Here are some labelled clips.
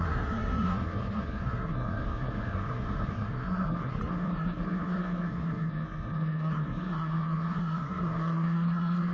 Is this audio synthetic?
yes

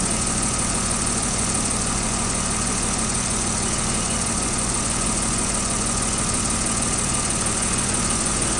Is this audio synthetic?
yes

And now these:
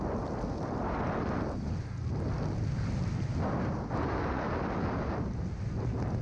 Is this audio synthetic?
no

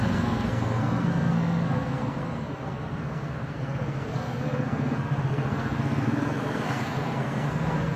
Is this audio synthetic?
yes